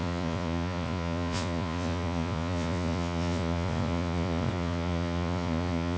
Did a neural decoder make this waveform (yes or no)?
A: yes